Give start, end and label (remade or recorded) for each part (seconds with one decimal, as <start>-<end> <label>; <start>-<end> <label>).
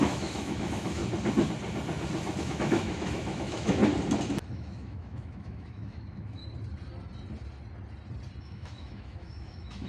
0.0-1.0 remade; 1.0-2.4 recorded; 2.4-3.8 remade; 3.8-4.3 recorded; 4.3-6.4 remade; 6.4-8.4 recorded; 8.4-9.9 remade